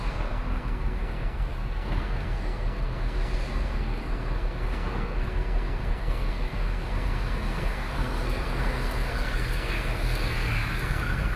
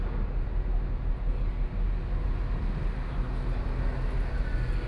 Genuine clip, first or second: second